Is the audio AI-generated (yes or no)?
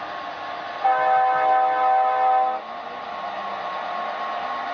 no